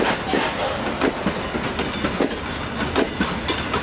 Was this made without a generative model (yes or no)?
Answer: yes